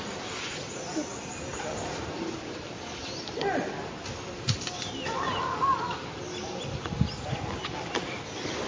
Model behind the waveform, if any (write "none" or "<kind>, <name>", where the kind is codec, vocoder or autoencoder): none